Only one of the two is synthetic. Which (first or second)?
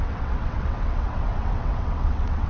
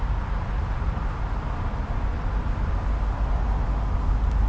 first